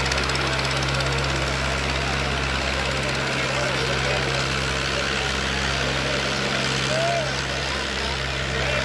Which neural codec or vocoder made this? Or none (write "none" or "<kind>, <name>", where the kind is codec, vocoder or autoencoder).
none